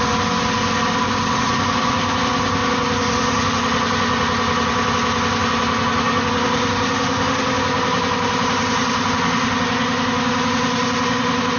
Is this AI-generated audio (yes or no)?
no